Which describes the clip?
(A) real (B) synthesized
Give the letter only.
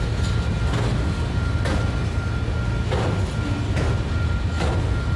A